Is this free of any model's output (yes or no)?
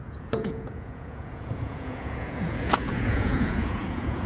no